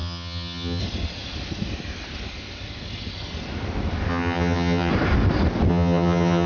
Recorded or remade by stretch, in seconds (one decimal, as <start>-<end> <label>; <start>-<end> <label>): 0.0-0.8 remade; 0.8-4.1 recorded; 4.1-4.9 remade; 4.9-5.7 recorded; 5.7-6.5 remade